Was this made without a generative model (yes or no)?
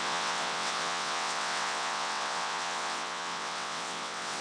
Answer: no